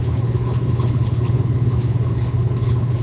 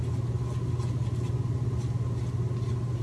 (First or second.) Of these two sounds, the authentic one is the second